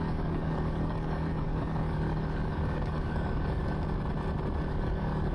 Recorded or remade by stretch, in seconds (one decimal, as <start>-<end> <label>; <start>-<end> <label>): 0.0-3.6 remade; 3.6-4.7 recorded; 4.7-5.3 remade